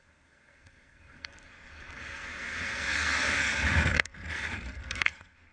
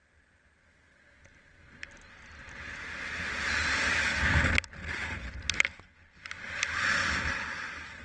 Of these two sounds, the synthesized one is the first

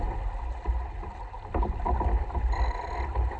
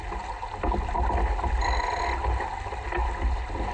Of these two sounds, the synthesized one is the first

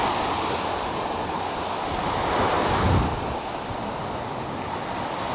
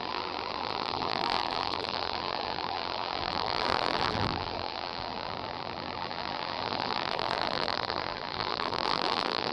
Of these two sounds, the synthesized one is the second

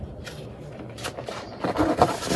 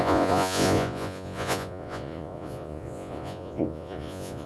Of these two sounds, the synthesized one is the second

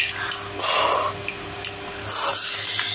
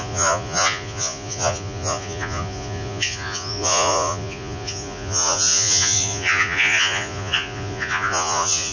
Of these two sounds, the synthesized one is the second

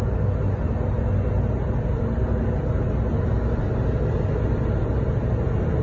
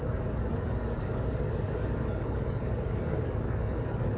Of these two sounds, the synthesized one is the second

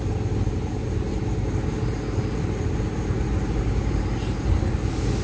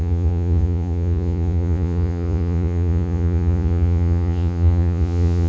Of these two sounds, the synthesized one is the second